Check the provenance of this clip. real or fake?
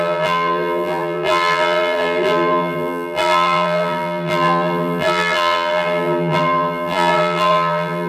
fake